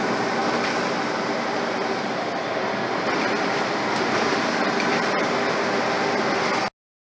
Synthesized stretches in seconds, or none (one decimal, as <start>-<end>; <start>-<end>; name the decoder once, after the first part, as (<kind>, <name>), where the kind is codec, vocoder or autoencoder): none